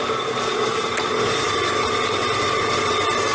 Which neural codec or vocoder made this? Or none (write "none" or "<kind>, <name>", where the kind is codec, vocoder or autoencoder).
none